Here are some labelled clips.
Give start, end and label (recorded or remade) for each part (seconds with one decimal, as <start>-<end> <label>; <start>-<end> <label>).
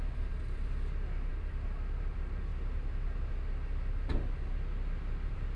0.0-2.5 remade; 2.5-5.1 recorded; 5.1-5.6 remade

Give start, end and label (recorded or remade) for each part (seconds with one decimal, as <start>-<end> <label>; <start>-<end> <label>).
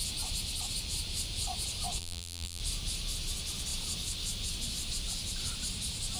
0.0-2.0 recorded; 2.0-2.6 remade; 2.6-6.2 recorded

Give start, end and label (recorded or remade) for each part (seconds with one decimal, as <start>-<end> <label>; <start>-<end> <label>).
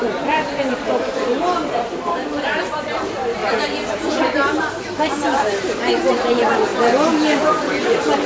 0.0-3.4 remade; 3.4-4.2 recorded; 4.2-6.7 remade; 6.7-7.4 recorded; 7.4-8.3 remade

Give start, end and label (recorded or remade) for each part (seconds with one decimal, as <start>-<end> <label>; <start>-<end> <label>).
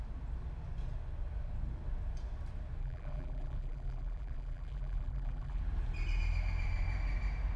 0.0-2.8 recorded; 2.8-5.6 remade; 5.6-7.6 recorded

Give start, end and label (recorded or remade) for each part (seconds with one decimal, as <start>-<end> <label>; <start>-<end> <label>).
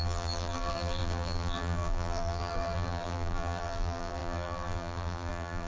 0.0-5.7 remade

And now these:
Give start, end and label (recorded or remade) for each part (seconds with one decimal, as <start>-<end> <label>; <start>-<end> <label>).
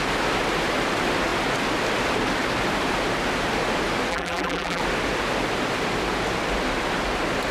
0.0-4.1 recorded; 4.1-4.8 remade; 4.8-7.5 recorded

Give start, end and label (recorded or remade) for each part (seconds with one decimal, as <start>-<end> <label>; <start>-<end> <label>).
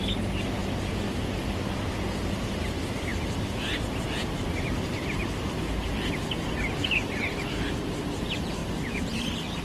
0.0-8.6 recorded; 8.6-9.6 remade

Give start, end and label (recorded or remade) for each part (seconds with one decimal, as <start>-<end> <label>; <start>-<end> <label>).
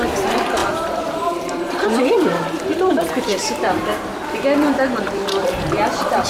0.0-4.1 remade; 4.1-4.7 recorded; 4.7-6.3 remade